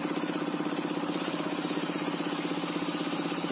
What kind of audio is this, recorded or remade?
remade